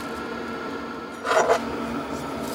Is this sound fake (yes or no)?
no